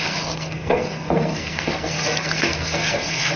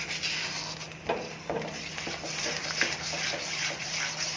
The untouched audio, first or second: second